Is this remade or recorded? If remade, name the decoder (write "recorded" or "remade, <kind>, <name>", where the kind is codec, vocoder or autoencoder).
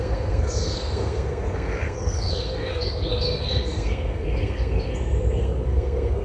remade, codec, SNAC